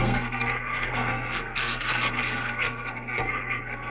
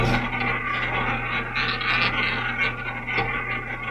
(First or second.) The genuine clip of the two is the second